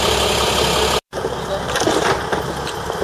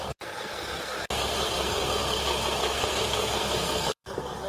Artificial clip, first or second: second